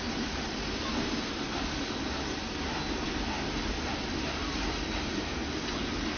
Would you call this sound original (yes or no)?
yes